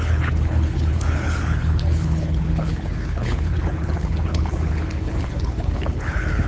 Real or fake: fake